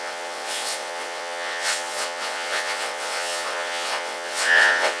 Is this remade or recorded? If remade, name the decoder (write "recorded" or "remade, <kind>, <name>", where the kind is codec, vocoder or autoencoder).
remade, vocoder, WaveNeXt